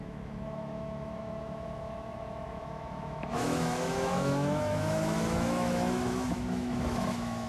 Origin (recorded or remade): remade